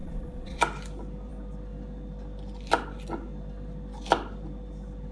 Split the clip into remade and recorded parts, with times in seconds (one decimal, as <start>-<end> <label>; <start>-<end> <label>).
0.0-0.6 remade; 0.6-5.1 recorded